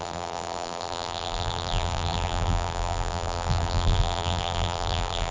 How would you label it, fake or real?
fake